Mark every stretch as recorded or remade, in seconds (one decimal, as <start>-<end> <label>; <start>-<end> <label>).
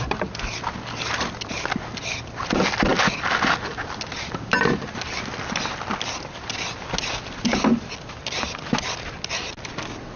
0.0-10.2 recorded